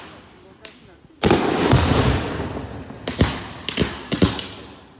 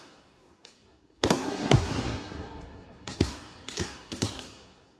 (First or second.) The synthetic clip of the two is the second